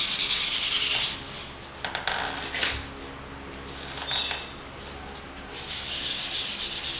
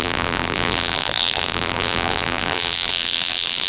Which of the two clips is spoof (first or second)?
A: second